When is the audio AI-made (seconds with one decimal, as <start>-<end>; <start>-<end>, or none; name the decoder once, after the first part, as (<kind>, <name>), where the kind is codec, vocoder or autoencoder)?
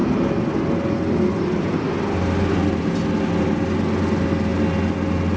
none